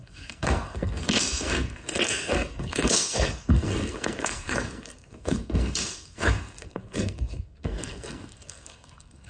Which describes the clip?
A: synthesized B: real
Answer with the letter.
A